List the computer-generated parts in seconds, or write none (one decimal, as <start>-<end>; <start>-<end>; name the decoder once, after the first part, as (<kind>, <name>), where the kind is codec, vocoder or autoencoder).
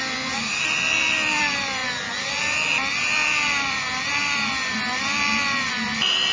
0.0-1.8 (vocoder, BigVGAN v2); 2.4-6.3